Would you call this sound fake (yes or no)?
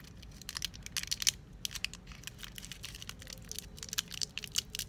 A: no